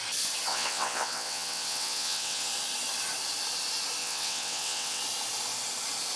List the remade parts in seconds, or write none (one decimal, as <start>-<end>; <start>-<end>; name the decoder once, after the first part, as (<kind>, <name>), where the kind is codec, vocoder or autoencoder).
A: 0.5-2.5 (vocoder, WaveNeXt); 4.0-5.0